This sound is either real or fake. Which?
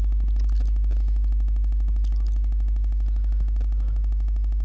real